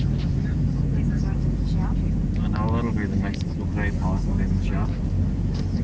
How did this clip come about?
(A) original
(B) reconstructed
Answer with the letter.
A